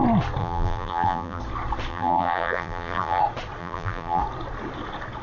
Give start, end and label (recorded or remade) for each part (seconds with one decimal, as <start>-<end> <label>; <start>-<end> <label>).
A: 0.0-0.4 recorded; 0.4-1.4 remade; 1.4-1.9 recorded; 1.9-3.2 remade; 3.2-3.6 recorded; 3.6-4.2 remade; 4.2-5.2 recorded